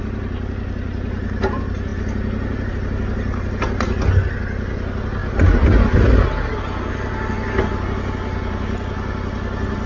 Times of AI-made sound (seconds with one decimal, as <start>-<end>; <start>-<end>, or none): none